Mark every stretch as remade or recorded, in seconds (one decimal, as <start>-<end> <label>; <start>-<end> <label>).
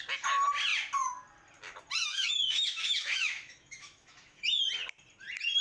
0.0-2.0 recorded; 2.0-4.5 remade; 4.5-5.6 recorded